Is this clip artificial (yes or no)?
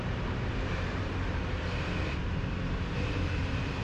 yes